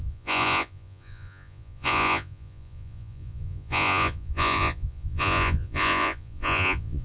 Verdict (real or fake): fake